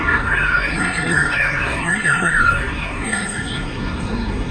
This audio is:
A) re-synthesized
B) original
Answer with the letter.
A